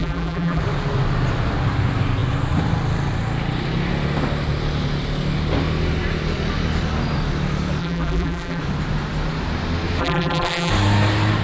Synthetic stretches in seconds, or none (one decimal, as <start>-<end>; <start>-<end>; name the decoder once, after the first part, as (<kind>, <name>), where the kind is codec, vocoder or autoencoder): 0.0-0.6 (vocoder, BigVGAN v2); 7.8-8.6; 10.0-10.7